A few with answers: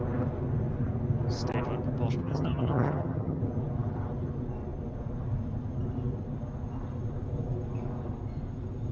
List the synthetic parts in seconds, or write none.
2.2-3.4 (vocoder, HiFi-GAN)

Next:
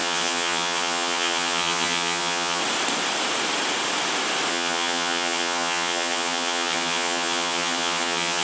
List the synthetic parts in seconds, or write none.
0.0-2.6 (vocoder, HiFi-GAN); 4.5-8.4

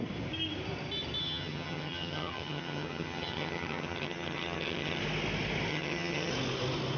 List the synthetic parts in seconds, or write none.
1.2-5.0 (vocoder, HiFi-GAN); 5.7-6.3

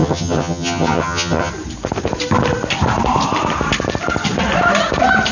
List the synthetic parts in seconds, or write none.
0.0-1.5 (vocoder, HiFi-GAN)